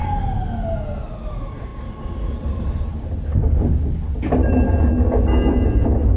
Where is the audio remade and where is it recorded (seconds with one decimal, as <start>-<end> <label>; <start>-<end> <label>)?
0.0-6.2 recorded